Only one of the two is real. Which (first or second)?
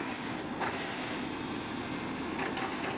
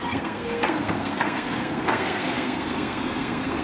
first